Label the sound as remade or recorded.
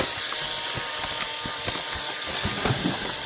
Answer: recorded